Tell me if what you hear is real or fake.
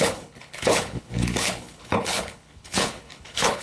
fake